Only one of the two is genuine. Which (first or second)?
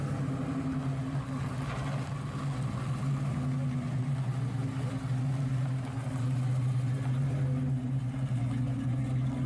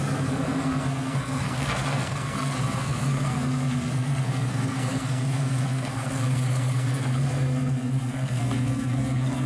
first